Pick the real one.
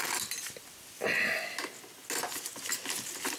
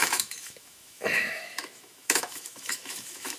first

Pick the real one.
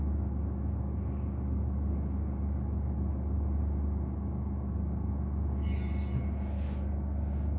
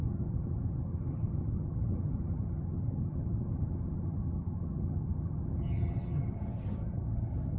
first